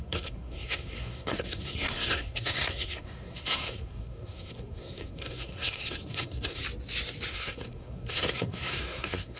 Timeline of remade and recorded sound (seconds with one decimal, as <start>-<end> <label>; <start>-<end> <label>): 0.0-6.6 remade; 6.6-7.3 recorded; 7.3-9.4 remade